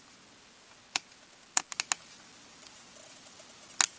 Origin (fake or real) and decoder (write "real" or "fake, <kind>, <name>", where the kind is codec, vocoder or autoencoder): real